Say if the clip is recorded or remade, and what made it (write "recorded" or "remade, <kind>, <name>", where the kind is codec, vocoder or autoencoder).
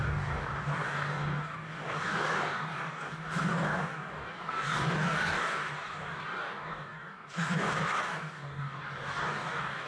remade, codec, DAC